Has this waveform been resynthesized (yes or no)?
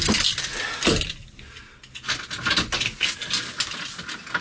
no